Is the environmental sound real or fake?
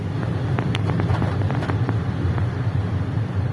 fake